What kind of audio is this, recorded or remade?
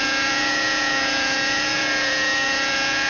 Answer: remade